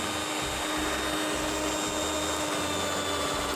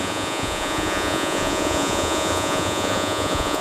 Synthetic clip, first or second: second